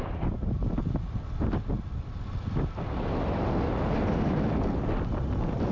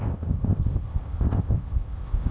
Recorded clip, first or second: first